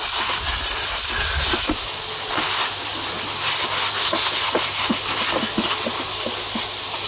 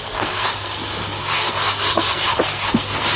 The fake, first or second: second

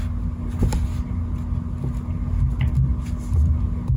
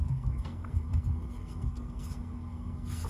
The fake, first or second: second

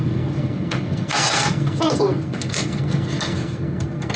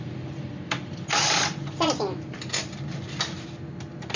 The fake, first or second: first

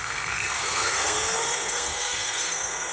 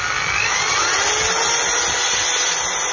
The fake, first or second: first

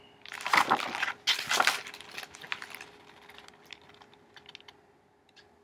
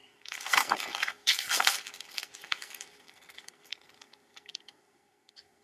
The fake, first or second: second